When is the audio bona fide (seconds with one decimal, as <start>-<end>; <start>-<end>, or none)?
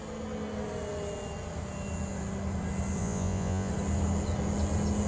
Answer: 0.0-3.0; 3.7-5.1